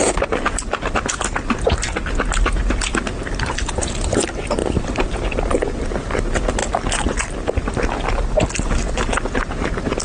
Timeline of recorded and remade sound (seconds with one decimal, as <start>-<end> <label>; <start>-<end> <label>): 0.0-10.0 recorded